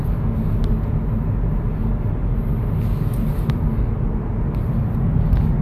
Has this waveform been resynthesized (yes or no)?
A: no